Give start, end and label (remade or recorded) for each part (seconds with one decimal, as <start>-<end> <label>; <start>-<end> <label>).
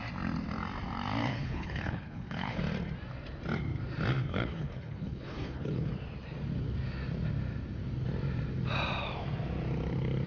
0.0-1.3 recorded; 1.3-2.6 remade; 2.6-4.3 recorded; 4.3-5.9 remade; 5.9-10.3 recorded